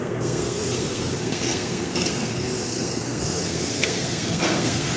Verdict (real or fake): fake